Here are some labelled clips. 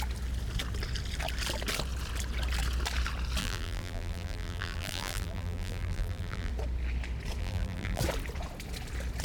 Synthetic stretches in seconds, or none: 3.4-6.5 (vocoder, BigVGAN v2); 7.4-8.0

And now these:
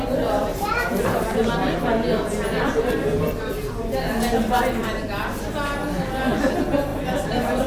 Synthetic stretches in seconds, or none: 0.5-1.3 (vocoder, BigVGAN v2); 6.9-7.7

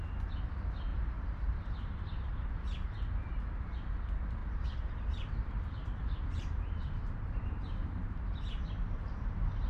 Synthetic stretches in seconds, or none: 0.9-1.9 (vocoder, BigVGAN v2); 4.4-9.7

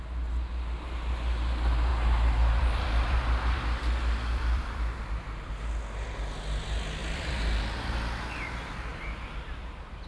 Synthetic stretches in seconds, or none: 1.9-5.1 (vocoder, BigVGAN v2); 7.0-7.6